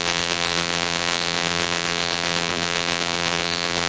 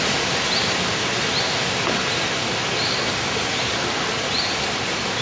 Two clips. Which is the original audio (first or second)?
second